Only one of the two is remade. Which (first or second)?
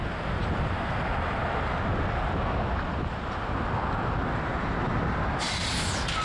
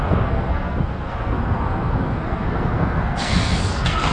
second